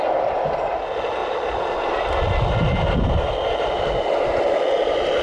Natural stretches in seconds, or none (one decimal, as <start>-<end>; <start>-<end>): 0.0-1.2; 1.9-5.2